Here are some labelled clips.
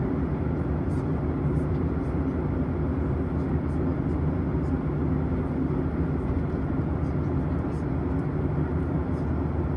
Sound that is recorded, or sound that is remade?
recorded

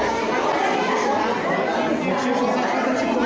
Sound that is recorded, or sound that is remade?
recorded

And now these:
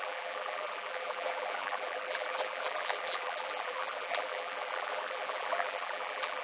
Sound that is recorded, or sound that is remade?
remade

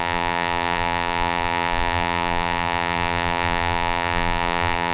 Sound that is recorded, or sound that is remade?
remade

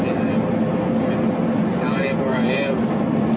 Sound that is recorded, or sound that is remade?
recorded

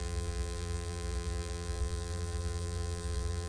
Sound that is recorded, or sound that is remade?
remade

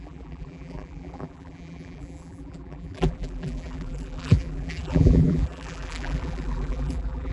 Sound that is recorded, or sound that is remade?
remade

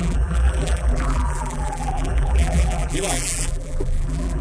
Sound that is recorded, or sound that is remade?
remade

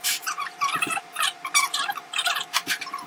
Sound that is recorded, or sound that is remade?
remade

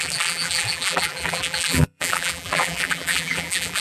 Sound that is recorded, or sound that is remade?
remade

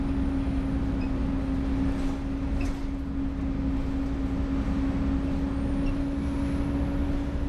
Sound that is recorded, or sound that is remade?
recorded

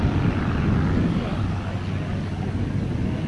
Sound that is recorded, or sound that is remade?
recorded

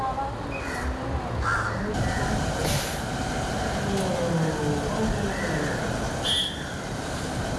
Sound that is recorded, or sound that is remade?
recorded